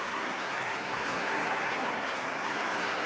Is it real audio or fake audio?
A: fake